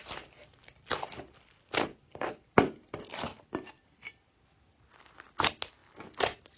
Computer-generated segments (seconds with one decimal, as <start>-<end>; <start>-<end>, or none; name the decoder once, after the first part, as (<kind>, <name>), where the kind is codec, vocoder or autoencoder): 0.4-2.0 (vocoder, BigVGAN v2); 2.8-4.9; 5.8-6.6

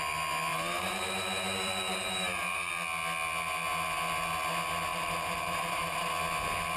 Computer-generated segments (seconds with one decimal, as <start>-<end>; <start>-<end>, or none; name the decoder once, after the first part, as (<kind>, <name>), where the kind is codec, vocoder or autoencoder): 0.5-2.7 (vocoder, BigVGAN v2); 4.9-6.1